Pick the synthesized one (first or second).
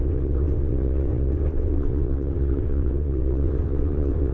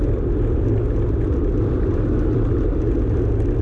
first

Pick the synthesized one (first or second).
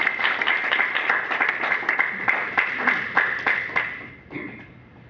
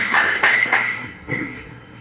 second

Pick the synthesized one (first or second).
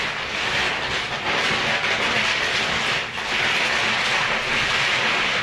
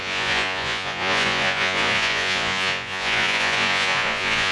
second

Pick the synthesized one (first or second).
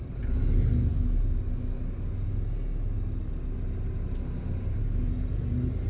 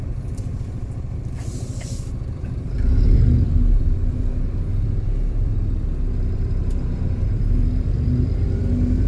second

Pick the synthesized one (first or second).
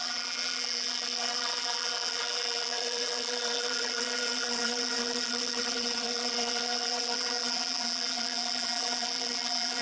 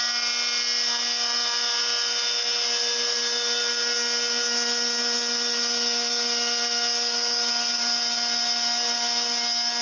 first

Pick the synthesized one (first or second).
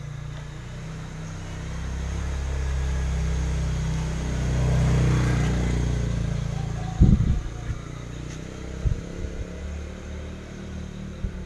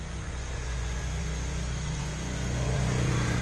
second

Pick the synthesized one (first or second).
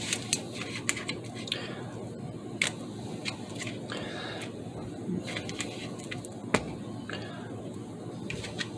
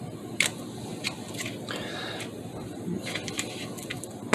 second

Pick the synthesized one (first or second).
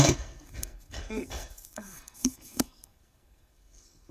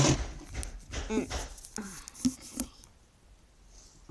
first